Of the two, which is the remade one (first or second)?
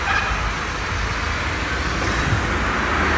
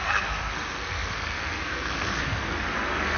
second